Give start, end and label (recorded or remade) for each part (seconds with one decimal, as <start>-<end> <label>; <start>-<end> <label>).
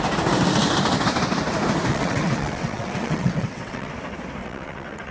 0.0-1.9 recorded; 1.9-3.9 remade; 3.9-4.4 recorded; 4.4-5.1 remade